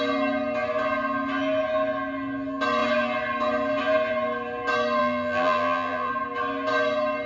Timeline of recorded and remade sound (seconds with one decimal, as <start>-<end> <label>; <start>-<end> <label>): 0.0-5.0 recorded; 5.0-6.1 remade; 6.1-7.3 recorded